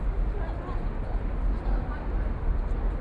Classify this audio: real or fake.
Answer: real